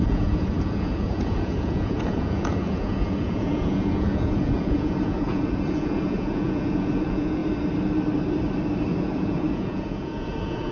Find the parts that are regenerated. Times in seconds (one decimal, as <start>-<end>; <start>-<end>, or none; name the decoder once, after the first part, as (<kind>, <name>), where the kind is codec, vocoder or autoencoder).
0.0-7.4 (vocoder, Vocos); 9.0-10.7

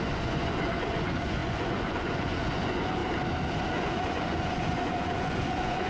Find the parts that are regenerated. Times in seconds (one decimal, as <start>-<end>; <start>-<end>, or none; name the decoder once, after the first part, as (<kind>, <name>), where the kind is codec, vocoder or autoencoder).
0.0-3.0 (vocoder, Vocos); 3.7-5.9

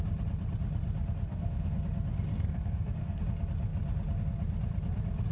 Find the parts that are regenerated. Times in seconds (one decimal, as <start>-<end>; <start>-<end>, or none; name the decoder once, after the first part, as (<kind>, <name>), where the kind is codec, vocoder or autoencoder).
1.3-1.8 (codec, SNAC); 2.3-3.2

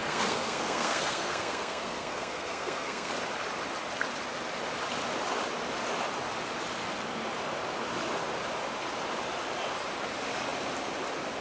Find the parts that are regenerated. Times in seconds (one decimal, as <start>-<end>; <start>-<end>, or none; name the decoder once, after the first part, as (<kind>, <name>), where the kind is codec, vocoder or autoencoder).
0.0-3.1 (codec, SNAC)

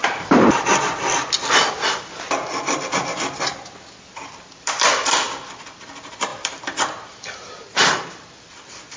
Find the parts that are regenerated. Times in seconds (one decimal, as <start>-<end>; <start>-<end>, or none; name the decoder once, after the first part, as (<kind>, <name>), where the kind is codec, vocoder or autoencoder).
none

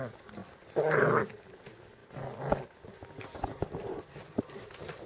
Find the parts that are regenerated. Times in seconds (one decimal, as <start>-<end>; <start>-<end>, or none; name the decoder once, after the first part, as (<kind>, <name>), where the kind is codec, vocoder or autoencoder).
none